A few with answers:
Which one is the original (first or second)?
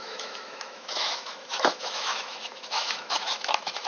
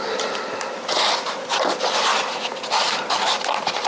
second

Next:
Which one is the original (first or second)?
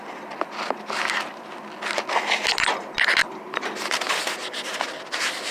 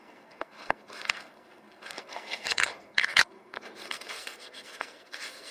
first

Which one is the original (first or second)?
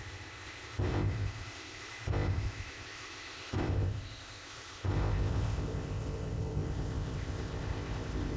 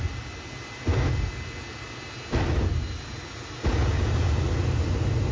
second